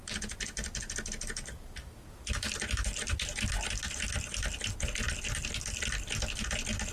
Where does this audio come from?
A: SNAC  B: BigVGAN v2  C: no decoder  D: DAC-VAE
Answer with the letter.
C